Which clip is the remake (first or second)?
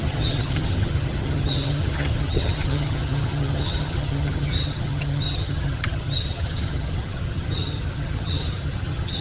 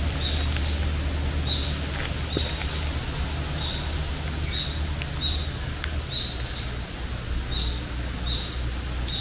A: first